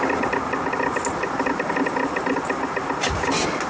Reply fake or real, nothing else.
real